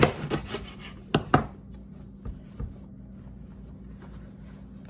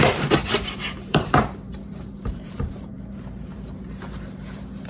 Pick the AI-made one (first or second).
second